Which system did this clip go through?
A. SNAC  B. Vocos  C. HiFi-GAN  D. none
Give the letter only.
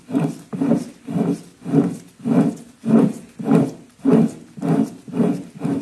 D